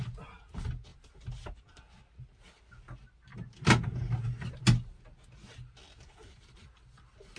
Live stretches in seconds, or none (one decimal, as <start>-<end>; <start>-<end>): 0.0-7.4